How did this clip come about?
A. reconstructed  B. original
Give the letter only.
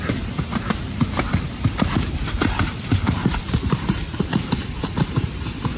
A